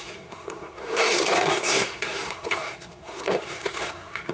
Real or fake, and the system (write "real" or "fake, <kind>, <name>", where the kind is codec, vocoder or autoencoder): fake, codec, SNAC